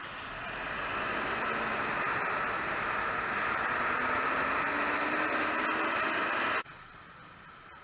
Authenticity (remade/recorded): recorded